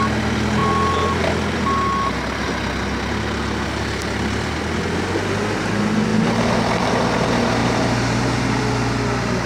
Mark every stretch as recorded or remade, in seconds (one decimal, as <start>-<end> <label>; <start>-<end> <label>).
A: 0.0-6.1 recorded; 6.1-6.9 remade; 6.9-7.6 recorded; 7.6-8.6 remade; 8.6-9.5 recorded